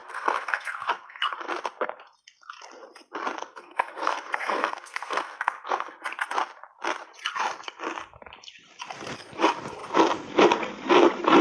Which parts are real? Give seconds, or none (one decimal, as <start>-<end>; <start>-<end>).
1.2-3.4; 5.9-11.4